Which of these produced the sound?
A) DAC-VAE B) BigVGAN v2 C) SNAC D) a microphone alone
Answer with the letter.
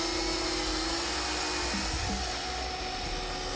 D